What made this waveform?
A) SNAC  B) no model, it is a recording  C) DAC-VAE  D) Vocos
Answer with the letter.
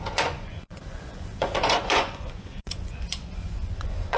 D